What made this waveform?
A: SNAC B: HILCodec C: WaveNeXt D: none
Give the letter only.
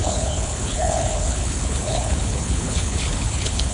B